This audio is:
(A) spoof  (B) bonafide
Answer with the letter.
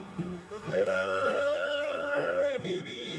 A